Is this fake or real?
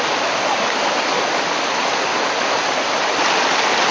real